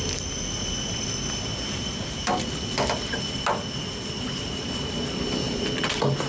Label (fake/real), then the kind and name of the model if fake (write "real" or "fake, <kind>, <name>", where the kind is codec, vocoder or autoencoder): real